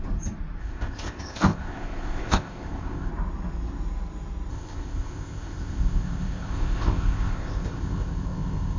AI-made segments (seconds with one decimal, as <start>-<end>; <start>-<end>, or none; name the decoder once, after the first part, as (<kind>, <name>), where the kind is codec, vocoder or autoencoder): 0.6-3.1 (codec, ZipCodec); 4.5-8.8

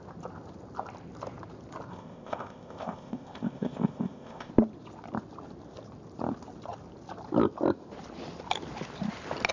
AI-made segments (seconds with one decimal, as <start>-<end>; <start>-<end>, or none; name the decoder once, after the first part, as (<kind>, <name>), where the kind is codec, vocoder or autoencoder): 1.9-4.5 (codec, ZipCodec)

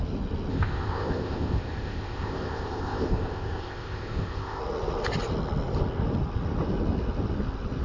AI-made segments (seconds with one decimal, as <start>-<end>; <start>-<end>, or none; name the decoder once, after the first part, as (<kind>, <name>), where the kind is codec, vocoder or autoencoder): 0.5-4.6 (codec, ZipCodec)

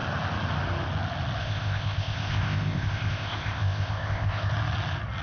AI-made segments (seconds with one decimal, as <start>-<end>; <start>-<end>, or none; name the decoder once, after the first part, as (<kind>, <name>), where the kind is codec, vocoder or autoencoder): 1.4-4.5 (codec, ZipCodec)